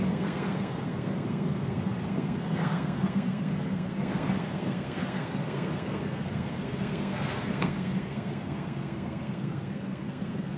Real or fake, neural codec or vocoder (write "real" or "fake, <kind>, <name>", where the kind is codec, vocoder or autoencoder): fake, codec, SNAC